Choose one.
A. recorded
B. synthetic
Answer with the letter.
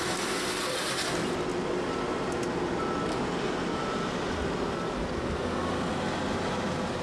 A